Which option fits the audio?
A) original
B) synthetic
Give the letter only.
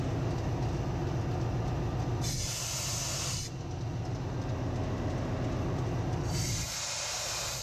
A